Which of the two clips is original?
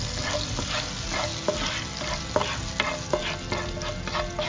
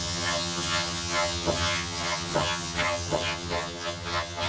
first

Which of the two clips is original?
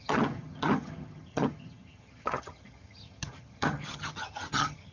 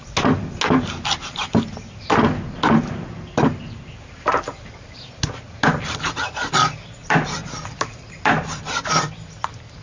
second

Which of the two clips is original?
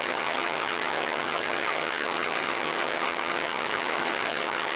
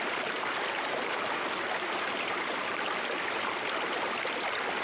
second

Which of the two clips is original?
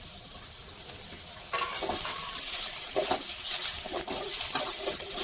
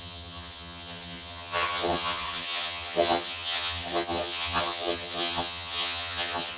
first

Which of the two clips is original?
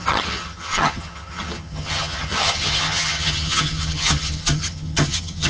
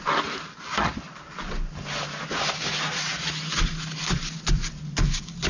second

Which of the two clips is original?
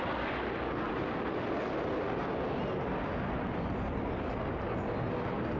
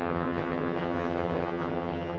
first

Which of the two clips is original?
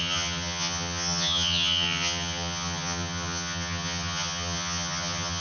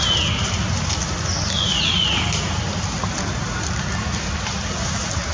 second